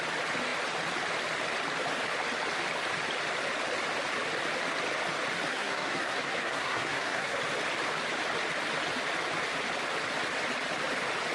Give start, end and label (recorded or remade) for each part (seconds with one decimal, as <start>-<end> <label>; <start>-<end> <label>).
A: 0.0-5.5 recorded; 5.5-7.4 remade; 7.4-11.3 recorded